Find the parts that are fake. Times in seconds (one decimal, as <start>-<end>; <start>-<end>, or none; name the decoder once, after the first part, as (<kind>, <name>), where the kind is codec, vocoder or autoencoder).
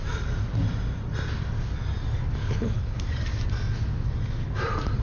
2.4-3.0 (codec, HILCodec)